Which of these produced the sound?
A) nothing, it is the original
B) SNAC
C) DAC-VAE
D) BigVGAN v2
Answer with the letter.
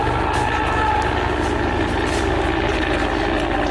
A